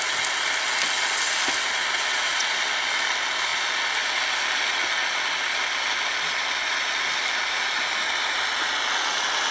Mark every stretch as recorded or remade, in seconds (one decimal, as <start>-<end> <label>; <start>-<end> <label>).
0.0-2.1 recorded; 2.1-2.6 remade; 2.6-9.5 recorded